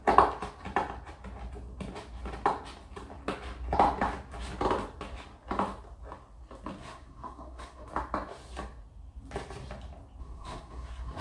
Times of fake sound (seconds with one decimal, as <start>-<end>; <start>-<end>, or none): 6.8-7.9; 10.2-11.2